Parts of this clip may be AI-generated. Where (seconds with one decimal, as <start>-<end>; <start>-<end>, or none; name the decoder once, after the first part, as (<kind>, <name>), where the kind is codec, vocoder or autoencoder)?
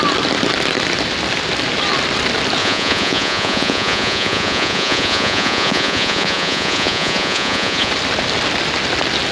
2.6-7.9 (vocoder, Vocos)